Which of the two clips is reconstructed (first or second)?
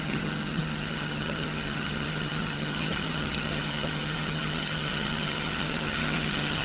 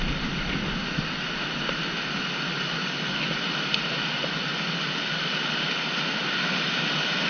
first